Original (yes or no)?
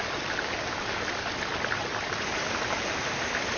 yes